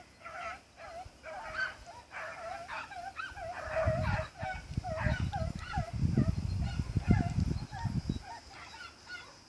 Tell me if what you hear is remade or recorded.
recorded